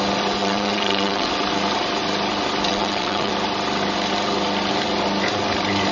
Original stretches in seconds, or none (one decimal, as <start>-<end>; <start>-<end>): 0.0-0.4; 1.3-2.7; 3.3-5.9